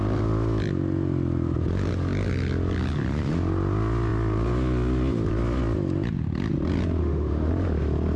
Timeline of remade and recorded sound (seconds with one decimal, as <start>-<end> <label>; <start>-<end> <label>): 0.0-7.0 recorded; 7.0-7.5 remade; 7.5-8.2 recorded